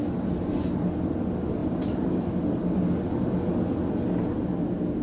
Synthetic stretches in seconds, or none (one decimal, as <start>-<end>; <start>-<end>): none